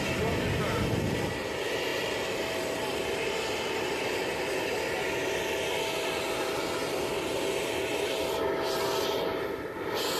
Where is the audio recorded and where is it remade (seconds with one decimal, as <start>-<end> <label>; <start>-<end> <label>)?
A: 0.0-10.2 recorded